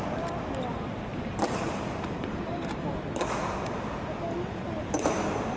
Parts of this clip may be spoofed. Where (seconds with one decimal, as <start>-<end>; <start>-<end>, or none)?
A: 1.1-2.8